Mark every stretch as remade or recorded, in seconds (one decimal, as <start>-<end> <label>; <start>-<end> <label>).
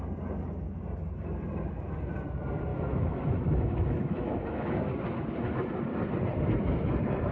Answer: 0.0-2.7 recorded; 2.7-4.7 remade; 4.7-7.3 recorded